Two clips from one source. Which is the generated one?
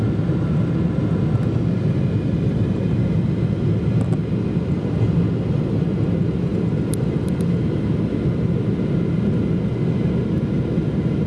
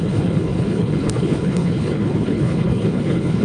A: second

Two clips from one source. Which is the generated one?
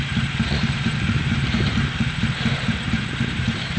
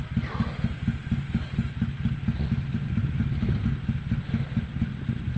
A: first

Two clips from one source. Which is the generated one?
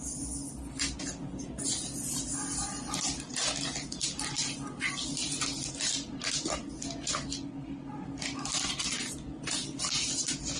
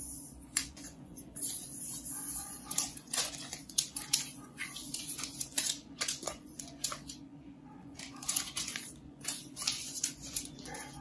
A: second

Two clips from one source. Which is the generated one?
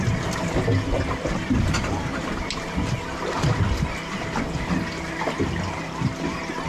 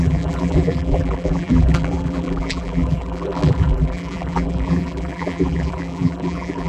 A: second